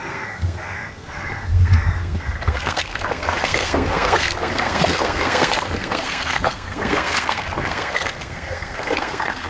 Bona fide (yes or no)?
no